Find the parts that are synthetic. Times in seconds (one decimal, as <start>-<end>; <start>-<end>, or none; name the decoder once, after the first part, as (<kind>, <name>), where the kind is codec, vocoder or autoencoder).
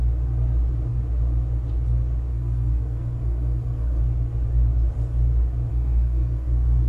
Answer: 2.3-4.0 (codec, SNAC); 5.7-6.9